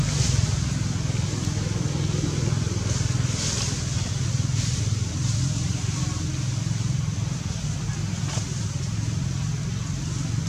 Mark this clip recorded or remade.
recorded